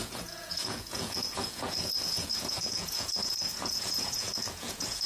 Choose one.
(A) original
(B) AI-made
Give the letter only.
B